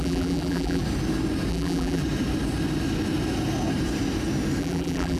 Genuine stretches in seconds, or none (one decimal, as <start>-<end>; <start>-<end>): 0.8-1.5; 2.0-4.6